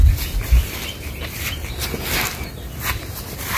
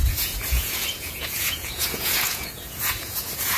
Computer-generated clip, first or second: second